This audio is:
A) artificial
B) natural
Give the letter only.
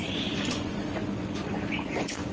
A